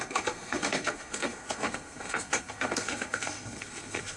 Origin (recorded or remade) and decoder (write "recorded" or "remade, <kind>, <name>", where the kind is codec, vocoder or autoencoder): remade, codec, SNAC